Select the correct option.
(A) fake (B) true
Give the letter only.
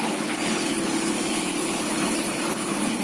A